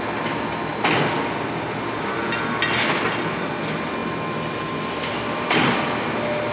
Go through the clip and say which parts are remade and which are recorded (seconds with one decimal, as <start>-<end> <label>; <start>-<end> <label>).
0.0-0.7 recorded; 0.7-3.5 remade; 3.5-4.0 recorded; 4.0-5.7 remade; 5.7-6.5 recorded